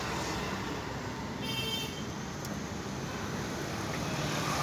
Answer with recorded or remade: recorded